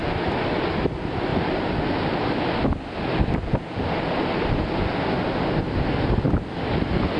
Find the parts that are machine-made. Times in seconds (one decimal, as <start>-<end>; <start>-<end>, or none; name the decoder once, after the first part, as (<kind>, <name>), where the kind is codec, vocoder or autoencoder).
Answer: none